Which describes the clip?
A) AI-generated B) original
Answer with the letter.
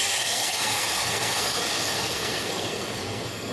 A